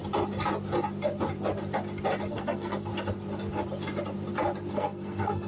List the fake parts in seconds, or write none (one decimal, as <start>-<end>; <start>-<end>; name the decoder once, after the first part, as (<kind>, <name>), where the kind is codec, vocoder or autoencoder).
2.3-2.9 (codec, SNAC); 4.7-5.5